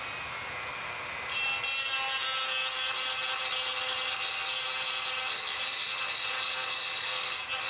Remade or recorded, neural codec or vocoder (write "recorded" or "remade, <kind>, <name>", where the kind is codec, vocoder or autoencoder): recorded